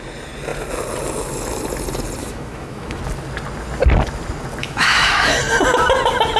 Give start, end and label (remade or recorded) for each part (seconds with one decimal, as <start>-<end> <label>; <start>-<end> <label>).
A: 0.0-2.2 recorded; 2.2-3.0 remade; 3.0-4.6 recorded; 4.6-5.4 remade; 5.4-6.4 recorded